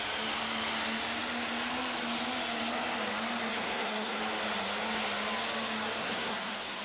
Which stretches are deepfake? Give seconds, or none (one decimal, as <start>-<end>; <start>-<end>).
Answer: 3.5-4.2; 6.0-6.8

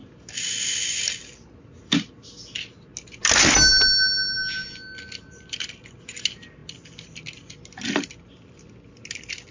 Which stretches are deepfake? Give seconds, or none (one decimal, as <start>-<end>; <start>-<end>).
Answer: none

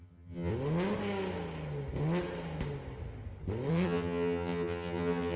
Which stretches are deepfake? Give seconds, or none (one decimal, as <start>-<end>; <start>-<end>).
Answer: 0.0-0.5; 3.7-5.4